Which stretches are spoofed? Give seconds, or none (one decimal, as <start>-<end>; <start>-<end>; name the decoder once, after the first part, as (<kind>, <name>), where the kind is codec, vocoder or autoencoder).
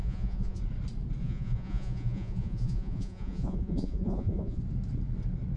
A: 0.0-0.6 (vocoder, Vocos); 1.2-4.6